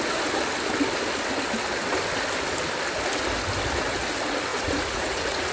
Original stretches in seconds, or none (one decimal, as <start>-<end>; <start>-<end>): 0.0-4.5